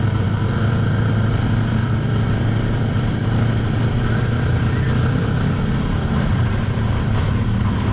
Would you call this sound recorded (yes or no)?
no